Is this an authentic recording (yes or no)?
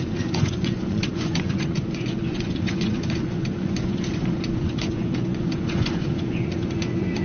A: no